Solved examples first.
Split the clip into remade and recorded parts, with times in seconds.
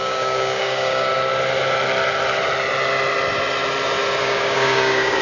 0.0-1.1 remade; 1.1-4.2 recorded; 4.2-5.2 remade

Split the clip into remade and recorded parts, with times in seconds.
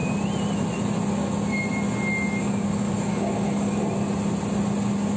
0.0-2.4 recorded; 2.4-3.8 remade; 3.8-5.2 recorded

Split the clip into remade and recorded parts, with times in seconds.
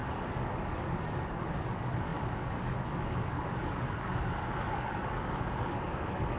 0.0-6.4 remade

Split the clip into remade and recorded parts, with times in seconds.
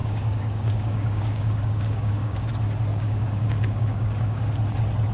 0.0-2.5 remade; 2.5-2.9 recorded; 2.9-4.5 remade; 4.5-5.1 recorded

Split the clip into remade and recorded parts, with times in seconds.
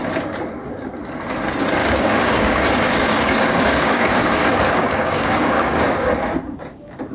0.0-1.8 recorded; 1.8-6.1 remade; 6.1-7.1 recorded